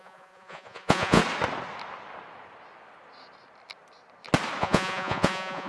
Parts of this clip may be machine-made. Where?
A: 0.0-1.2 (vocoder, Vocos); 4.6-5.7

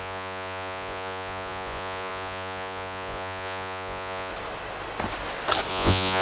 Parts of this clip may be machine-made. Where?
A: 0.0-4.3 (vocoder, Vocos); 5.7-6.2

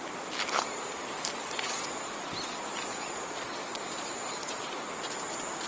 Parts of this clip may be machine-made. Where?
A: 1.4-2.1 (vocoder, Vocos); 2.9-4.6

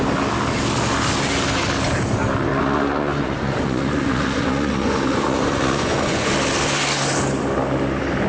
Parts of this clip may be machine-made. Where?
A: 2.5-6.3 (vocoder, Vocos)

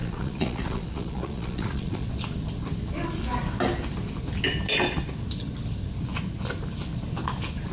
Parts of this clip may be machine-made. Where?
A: 0.0-2.1 (vocoder, Vocos)